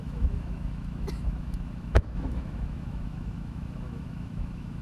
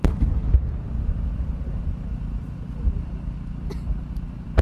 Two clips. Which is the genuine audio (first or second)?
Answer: second